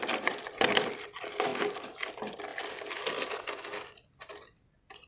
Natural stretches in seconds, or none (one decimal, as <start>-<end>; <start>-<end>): 1.5-2.1; 2.5-5.1